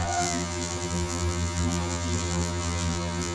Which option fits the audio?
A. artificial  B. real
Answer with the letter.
A